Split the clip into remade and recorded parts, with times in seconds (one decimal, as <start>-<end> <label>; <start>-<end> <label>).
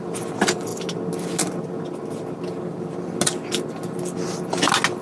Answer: 0.0-5.0 recorded